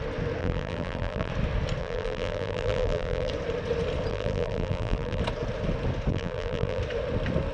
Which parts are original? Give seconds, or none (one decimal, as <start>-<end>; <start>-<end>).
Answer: 0.0-0.4; 1.3-1.8; 3.3-4.1; 5.2-6.1; 6.8-7.5